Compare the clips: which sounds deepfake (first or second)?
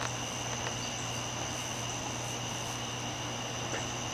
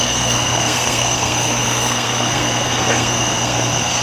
second